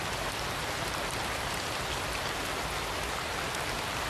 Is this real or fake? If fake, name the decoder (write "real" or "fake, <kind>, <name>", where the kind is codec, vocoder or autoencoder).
real